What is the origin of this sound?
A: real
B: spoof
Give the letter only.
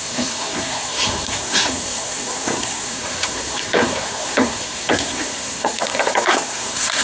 B